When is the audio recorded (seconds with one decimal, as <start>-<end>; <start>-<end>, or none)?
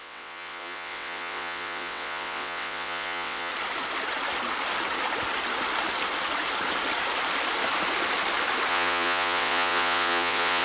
3.5-8.7